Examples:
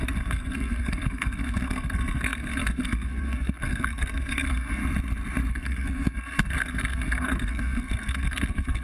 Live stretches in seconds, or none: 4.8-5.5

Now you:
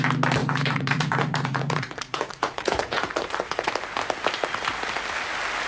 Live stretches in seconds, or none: 0.0-0.4; 3.7-5.7

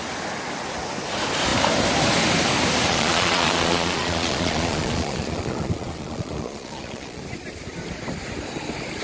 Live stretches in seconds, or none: 0.0-2.9; 7.2-9.0

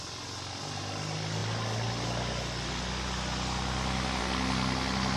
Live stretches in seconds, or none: 0.0-5.2